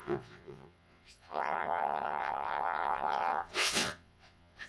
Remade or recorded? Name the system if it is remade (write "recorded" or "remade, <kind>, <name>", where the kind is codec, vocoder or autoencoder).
remade, vocoder, WaveNeXt